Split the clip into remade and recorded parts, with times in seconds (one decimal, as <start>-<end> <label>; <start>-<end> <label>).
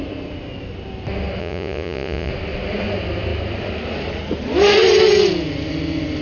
0.0-1.4 recorded; 1.4-2.3 remade; 2.3-6.2 recorded